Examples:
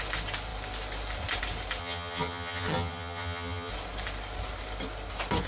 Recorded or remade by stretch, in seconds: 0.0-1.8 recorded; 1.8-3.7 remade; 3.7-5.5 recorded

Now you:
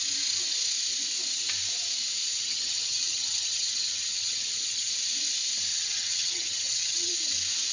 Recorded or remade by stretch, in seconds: 0.0-2.3 recorded; 2.3-4.9 remade; 4.9-5.7 recorded; 5.7-7.1 remade; 7.1-7.7 recorded

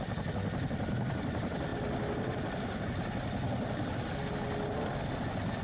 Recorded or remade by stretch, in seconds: 0.0-5.6 recorded

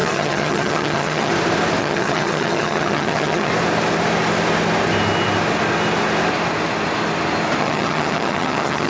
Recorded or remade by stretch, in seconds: 0.0-1.3 remade; 1.3-1.8 recorded; 1.8-3.5 remade; 3.5-7.6 recorded; 7.6-8.9 remade